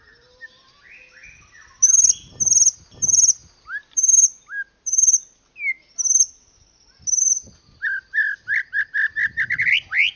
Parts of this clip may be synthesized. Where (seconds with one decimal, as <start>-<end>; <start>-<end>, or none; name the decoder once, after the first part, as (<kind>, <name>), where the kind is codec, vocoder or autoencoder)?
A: none